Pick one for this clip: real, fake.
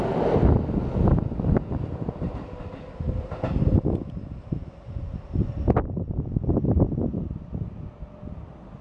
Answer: real